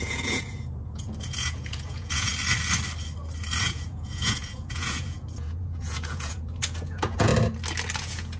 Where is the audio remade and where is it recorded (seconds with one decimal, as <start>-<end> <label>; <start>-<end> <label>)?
0.0-2.3 remade; 2.3-3.6 recorded; 3.6-7.3 remade; 7.3-8.0 recorded; 8.0-8.4 remade